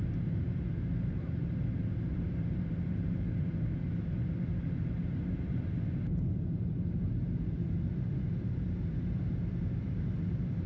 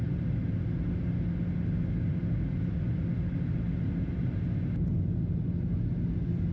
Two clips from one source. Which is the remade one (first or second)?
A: first